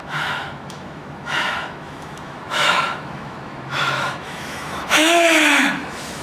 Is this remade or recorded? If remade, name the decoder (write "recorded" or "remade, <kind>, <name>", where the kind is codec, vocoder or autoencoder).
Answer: remade, autoencoder, DAC-VAE